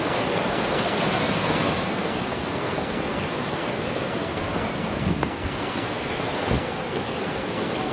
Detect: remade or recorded remade